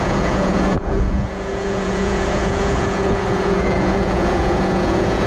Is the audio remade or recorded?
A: remade